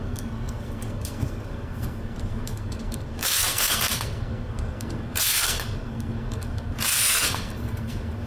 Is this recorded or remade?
remade